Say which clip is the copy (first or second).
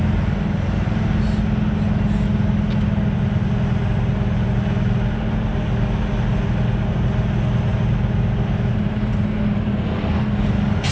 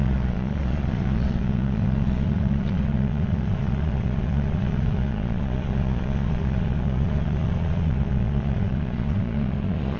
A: second